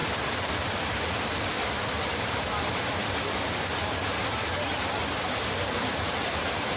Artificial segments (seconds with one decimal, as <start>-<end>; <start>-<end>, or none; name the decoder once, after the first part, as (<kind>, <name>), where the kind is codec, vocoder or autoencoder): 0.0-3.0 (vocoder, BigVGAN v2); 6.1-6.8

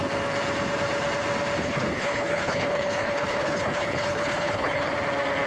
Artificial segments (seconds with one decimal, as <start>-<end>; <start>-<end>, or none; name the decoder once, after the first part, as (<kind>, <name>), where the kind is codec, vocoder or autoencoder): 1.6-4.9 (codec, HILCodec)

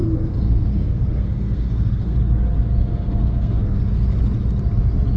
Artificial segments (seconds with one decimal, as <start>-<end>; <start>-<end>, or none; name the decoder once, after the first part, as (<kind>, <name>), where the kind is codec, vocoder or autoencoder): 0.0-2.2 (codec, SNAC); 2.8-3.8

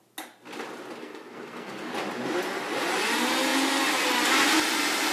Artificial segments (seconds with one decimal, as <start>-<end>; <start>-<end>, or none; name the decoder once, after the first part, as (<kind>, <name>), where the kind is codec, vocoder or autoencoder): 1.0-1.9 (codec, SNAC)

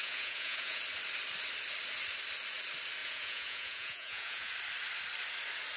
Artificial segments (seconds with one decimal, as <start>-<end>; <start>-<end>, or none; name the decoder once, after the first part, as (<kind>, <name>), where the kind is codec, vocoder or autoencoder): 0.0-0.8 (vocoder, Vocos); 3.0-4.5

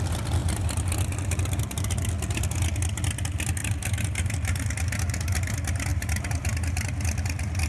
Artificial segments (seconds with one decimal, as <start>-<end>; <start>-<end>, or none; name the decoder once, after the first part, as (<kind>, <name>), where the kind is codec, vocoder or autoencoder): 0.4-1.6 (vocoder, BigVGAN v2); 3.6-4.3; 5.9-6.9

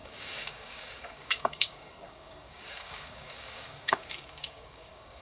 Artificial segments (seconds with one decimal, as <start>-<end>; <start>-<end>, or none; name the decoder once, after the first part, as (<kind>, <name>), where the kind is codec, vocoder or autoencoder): 0.0-5.2 (codec, DAC)